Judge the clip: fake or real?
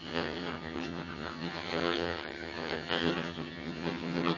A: fake